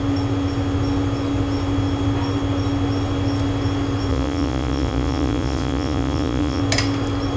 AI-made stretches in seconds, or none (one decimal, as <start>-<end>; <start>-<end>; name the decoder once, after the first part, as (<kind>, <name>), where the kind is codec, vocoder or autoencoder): 4.1-6.6 (vocoder, Vocos)